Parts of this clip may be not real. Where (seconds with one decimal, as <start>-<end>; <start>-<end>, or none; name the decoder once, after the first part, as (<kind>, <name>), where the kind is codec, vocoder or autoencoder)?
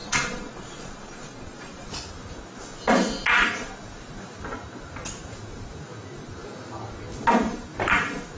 0.0-1.9 (vocoder, Vocos)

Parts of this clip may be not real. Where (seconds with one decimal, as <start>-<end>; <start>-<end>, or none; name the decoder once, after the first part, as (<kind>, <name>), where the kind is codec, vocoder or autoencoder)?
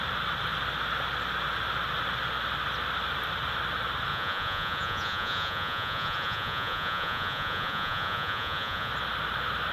4.1-8.9 (vocoder, Vocos)